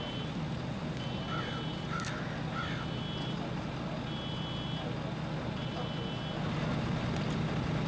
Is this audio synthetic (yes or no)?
no